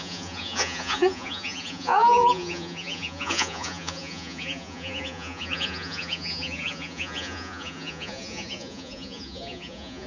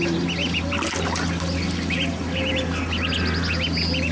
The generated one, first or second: first